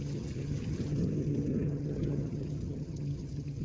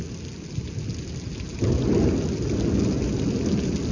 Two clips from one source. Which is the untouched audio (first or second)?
second